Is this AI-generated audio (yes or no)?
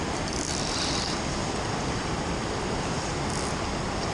no